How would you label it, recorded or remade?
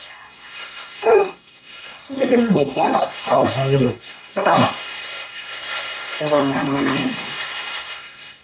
remade